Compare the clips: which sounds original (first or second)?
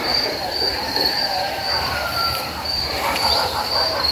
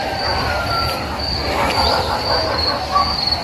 second